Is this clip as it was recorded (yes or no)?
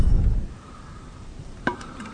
no